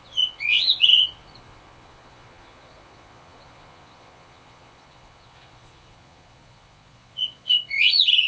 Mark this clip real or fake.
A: fake